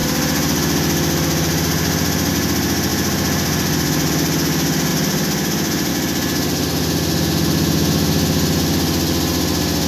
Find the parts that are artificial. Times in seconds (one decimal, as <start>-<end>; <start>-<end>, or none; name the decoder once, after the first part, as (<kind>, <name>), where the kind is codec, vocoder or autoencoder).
2.9-4.1 (vocoder, BigVGAN v2); 4.9-5.9